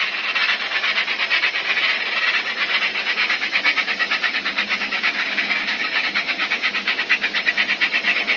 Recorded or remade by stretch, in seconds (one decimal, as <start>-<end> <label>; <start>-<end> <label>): 0.0-2.9 recorded; 2.9-7.5 remade; 7.5-8.4 recorded